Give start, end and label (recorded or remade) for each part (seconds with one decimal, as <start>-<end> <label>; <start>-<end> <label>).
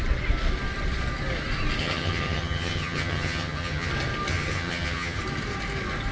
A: 0.0-1.8 recorded; 1.8-3.9 remade; 3.9-4.3 recorded; 4.3-5.2 remade; 5.2-6.1 recorded